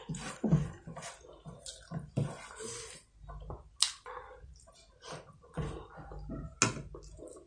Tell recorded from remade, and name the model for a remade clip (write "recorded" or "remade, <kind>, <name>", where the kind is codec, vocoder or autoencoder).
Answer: recorded